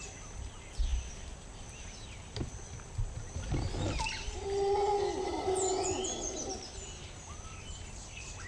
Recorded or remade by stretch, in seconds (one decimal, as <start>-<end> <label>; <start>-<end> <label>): 0.0-8.5 recorded